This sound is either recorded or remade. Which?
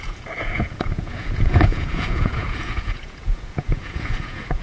remade